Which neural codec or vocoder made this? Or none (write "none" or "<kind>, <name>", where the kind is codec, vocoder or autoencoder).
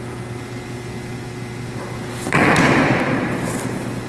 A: none